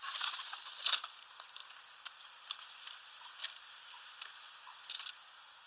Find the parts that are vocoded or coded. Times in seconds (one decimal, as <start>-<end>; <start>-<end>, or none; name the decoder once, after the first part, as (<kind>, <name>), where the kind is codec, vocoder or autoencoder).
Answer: none